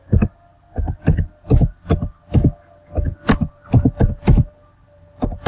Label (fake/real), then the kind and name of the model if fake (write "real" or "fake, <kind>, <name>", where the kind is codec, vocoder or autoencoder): real